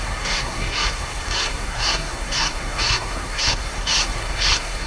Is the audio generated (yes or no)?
yes